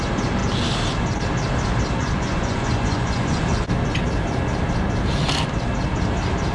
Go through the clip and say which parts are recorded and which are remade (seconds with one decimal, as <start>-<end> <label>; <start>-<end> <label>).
0.0-2.0 recorded; 2.0-3.4 remade; 3.4-6.5 recorded